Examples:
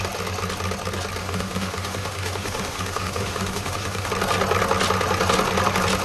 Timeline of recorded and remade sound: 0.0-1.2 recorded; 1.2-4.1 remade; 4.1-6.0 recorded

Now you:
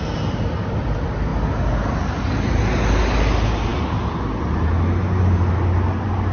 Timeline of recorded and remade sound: 0.0-6.3 recorded